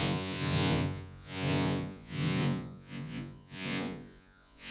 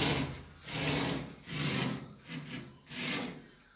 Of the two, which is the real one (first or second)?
second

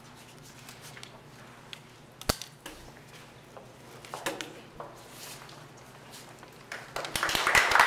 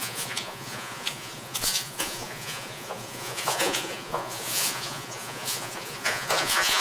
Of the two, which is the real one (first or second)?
first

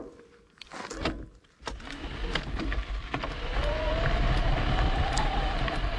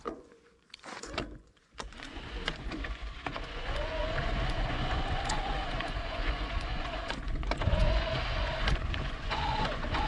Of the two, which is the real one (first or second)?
first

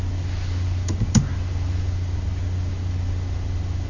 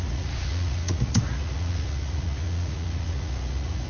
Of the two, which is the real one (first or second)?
first